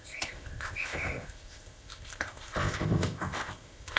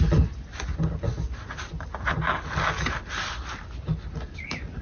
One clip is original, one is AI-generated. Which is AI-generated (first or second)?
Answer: first